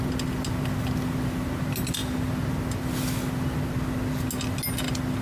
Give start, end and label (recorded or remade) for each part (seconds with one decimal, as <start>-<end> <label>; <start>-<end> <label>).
0.0-5.2 recorded